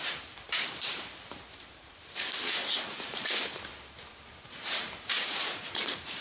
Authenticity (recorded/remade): remade